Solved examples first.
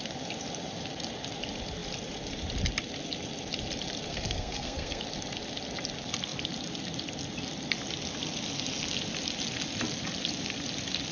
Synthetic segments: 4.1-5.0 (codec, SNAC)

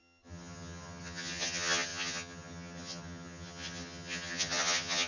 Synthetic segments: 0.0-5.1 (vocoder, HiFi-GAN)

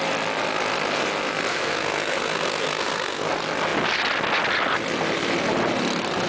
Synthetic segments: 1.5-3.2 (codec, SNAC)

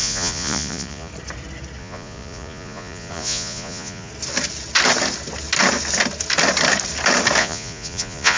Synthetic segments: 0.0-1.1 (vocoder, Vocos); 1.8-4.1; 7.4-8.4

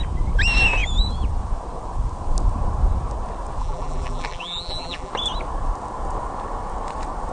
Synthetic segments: 3.6-5.1 (vocoder, BigVGAN v2)